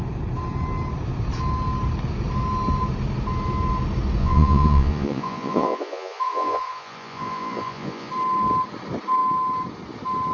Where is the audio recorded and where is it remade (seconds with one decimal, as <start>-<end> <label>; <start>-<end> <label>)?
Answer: 0.0-4.2 recorded; 4.2-8.1 remade; 8.1-10.3 recorded